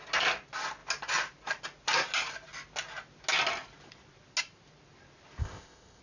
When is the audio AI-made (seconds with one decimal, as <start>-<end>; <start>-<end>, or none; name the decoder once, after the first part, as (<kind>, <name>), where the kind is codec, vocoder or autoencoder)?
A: 5.4-6.0 (codec, ZipCodec)